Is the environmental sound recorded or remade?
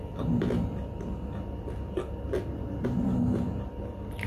recorded